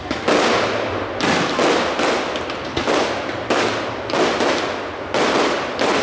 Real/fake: real